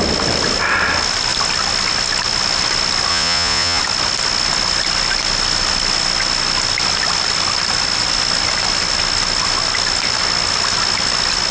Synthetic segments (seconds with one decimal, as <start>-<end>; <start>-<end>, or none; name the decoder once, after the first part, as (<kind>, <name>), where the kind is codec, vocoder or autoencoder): 3.1-3.8 (vocoder, Vocos)